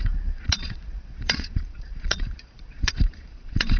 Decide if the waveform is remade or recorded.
remade